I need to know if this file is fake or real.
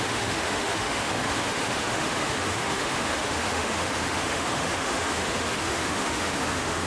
fake